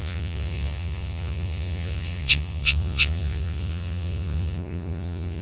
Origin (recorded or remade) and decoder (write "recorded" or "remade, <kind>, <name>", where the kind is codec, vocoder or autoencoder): remade, vocoder, Vocos